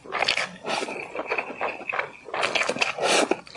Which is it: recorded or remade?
recorded